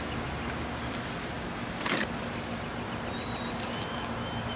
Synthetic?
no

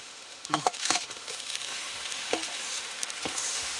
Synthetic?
yes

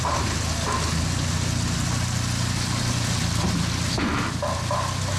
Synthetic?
no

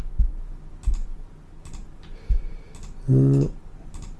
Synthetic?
no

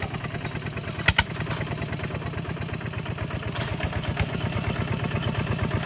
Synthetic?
no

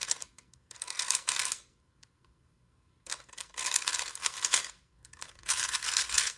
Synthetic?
yes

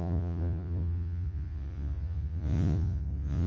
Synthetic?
yes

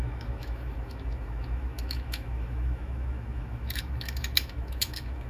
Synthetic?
yes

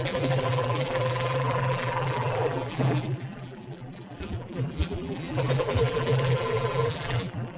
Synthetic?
yes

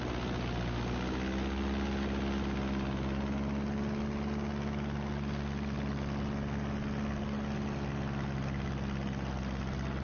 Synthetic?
no